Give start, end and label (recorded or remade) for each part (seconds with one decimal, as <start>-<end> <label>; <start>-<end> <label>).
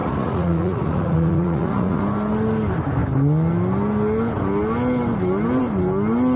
0.0-2.0 remade; 2.0-6.4 recorded